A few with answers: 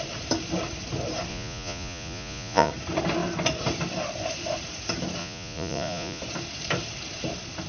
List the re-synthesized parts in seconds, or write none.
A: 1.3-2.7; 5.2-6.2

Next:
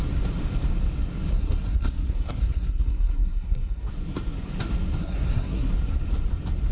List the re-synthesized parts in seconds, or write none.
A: 1.3-3.9; 5.0-5.7

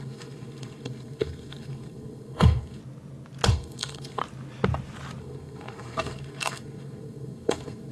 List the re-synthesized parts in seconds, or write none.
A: 0.0-2.8; 3.5-4.2; 5.2-7.9

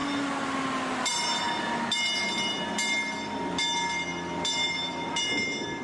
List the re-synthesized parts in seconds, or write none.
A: none

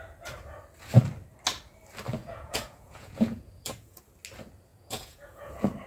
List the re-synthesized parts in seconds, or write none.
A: 2.2-4.0; 4.7-5.5

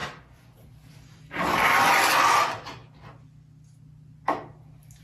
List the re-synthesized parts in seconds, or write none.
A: 0.0-2.8

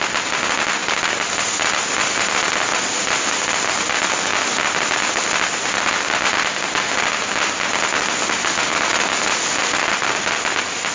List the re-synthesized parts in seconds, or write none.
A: none

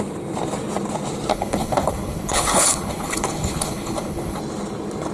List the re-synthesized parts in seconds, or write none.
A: 1.3-4.4